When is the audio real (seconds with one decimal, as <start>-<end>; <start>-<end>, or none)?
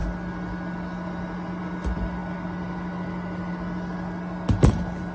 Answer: 0.0-5.1